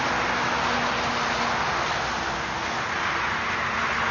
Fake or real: real